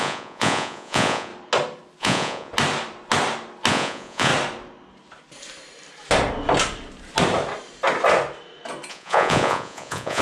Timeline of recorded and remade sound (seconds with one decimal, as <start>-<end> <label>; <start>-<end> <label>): 0.0-1.3 remade; 1.3-2.0 recorded; 2.0-2.5 remade; 2.5-3.7 recorded; 3.7-4.3 remade; 4.3-8.9 recorded; 8.9-10.2 remade

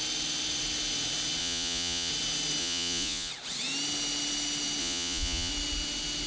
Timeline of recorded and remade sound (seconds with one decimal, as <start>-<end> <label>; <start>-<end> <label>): 0.0-1.4 recorded; 1.4-2.1 remade; 2.1-2.6 recorded; 2.6-3.3 remade; 3.3-4.8 recorded; 4.8-5.5 remade; 5.5-6.3 recorded

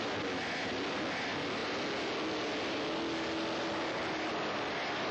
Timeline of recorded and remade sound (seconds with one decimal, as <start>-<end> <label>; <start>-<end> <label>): 0.0-5.1 recorded

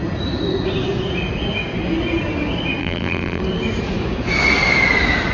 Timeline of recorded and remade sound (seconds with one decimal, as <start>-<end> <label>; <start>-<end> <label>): 0.0-2.8 recorded; 2.8-3.4 remade; 3.4-5.3 recorded